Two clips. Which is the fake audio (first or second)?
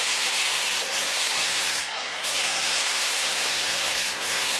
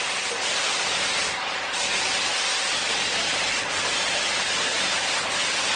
first